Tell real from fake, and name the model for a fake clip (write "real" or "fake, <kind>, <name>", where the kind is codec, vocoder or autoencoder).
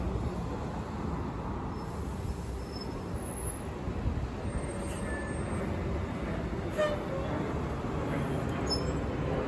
real